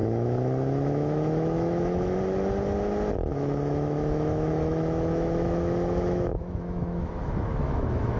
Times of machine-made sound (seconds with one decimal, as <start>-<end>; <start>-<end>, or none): 0.0-2.2; 3.3-8.2